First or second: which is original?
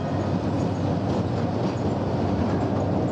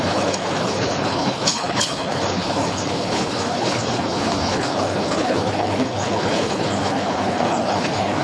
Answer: first